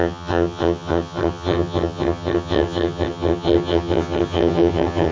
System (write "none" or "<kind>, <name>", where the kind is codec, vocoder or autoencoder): vocoder, HiFi-GAN